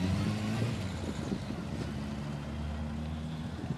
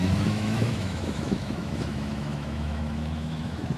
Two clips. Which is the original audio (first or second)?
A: first